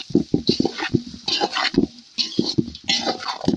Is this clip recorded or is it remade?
recorded